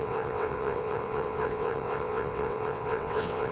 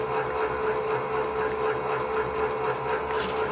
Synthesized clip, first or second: first